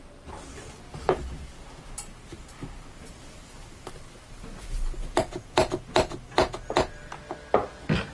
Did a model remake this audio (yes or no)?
no